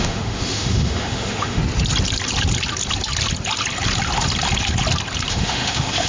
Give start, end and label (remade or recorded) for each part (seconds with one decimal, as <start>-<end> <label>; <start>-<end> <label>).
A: 0.0-1.6 remade; 1.6-5.3 recorded; 5.3-6.1 remade